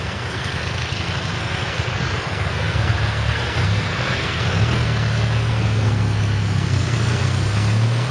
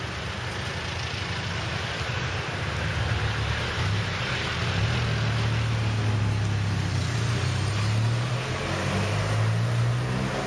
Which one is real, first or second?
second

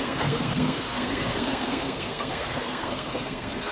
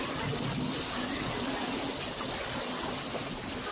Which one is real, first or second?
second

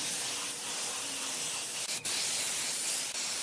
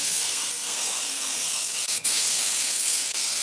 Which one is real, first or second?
first